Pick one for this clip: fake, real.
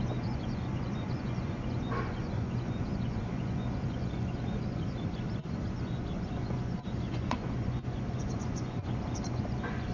fake